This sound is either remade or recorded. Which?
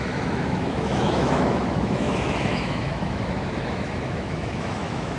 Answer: remade